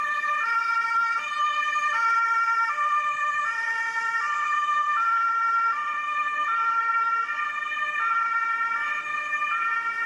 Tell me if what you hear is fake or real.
real